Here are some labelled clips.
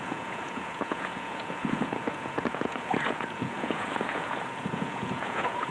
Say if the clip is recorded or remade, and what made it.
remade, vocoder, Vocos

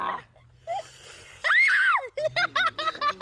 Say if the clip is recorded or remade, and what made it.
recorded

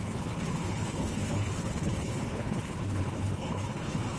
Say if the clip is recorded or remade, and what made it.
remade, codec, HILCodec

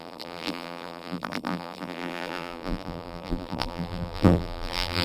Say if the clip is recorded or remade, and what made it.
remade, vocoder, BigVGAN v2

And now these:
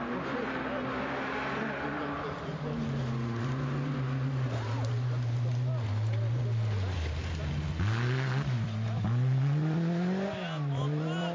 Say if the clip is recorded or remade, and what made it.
recorded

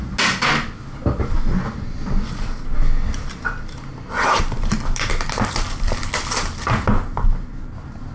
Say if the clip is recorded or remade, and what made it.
recorded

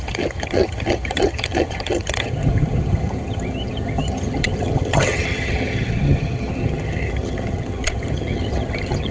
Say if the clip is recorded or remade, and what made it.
remade, vocoder, HiFi-GAN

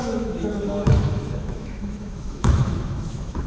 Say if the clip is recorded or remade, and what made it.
remade, autoencoder, DAC-VAE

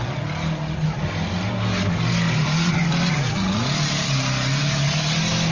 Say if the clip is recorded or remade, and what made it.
recorded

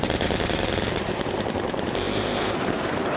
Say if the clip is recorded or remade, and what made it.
remade, vocoder, BigVGAN v2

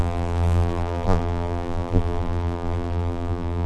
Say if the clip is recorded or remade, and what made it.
remade, vocoder, BigVGAN v2